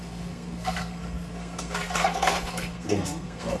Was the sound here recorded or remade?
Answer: remade